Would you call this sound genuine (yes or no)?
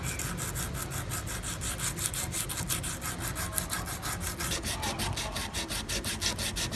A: yes